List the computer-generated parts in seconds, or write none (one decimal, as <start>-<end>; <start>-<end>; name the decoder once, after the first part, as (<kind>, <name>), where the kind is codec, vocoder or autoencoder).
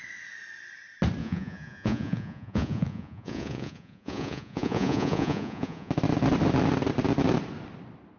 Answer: 1.2-5.9 (vocoder, Vocos)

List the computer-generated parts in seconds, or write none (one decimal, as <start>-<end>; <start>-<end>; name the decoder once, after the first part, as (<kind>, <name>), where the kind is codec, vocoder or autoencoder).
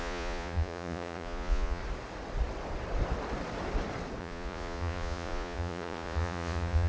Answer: 0.0-1.8 (vocoder, Vocos); 4.2-6.9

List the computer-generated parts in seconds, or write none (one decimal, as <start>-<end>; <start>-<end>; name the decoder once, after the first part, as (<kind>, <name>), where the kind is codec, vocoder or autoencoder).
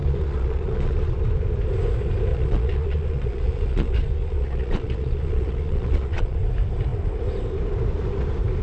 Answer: 0.0-1.1 (vocoder, Vocos); 2.3-6.4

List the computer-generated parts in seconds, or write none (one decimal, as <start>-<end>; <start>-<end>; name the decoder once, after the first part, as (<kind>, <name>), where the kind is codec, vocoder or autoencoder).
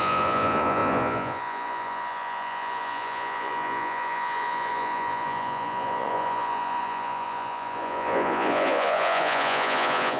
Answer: 0.0-10.2 (vocoder, Vocos)